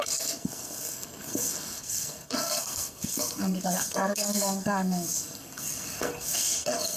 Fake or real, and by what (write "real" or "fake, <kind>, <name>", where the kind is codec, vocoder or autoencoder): fake, codec, SNAC